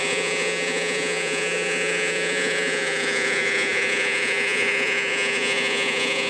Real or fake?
fake